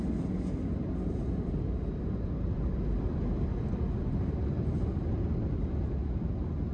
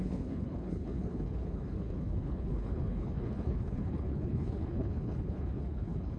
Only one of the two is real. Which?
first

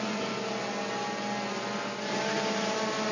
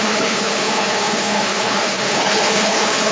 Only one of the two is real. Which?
first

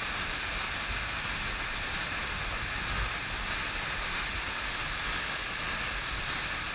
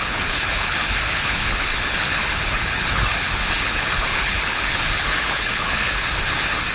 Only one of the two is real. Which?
first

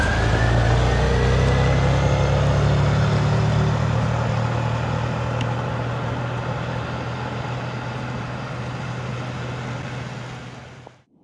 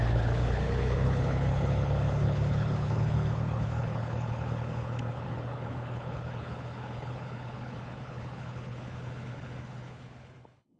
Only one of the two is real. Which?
first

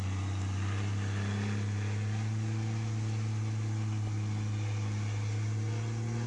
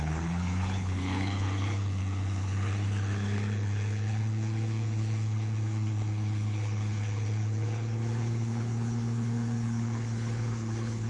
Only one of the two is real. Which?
first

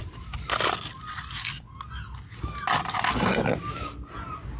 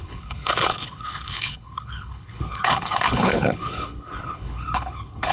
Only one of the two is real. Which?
first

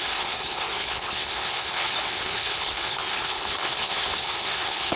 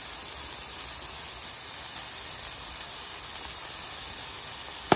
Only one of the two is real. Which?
second